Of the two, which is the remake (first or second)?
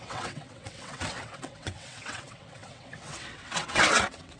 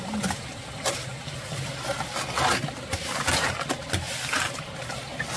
first